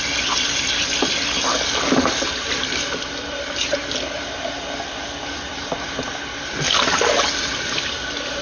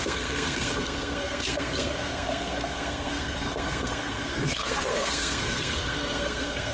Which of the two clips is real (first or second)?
first